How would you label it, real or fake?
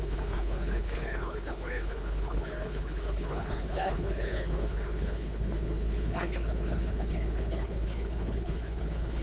fake